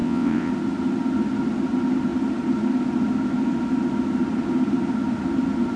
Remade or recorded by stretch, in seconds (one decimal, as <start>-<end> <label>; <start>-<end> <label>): 0.0-0.5 remade; 0.5-5.8 recorded